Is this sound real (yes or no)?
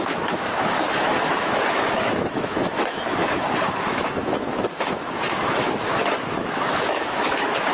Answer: no